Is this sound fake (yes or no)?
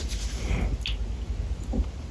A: no